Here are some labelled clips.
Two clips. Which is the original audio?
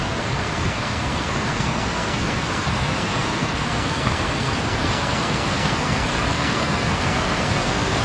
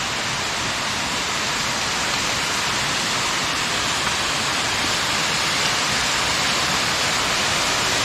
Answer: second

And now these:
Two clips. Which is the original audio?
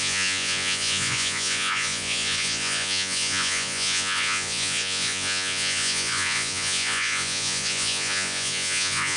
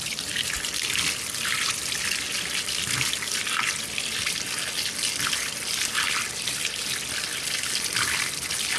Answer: second